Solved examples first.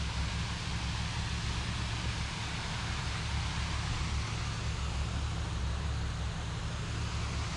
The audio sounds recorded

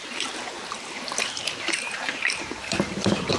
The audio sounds remade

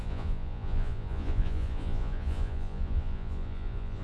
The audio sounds remade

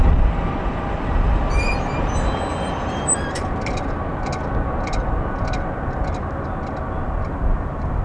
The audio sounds recorded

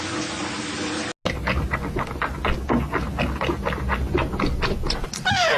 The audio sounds recorded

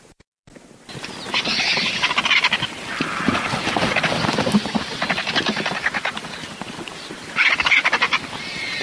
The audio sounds recorded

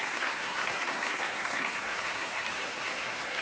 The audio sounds remade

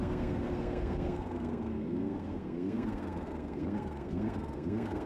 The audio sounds remade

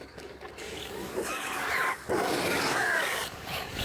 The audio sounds remade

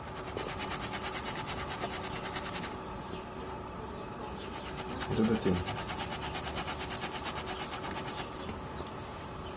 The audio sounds recorded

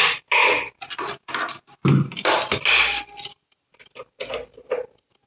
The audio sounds recorded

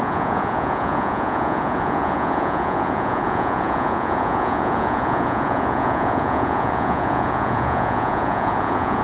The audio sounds remade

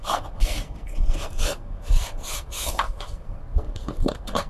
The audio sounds remade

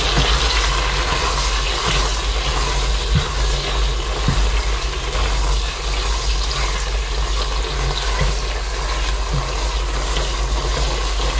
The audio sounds recorded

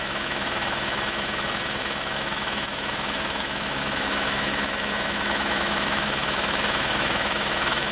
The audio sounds remade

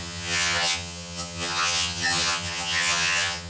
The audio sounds remade